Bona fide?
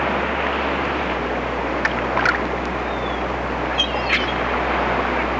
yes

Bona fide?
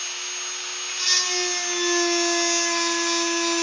yes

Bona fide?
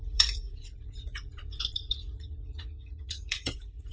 no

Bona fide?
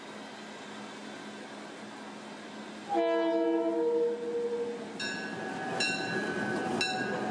yes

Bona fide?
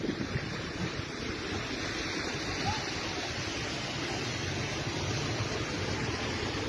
yes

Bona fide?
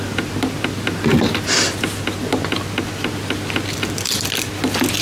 yes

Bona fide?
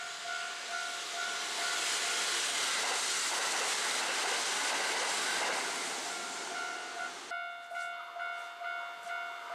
yes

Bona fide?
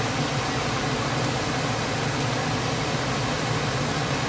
yes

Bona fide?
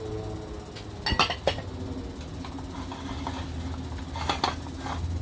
yes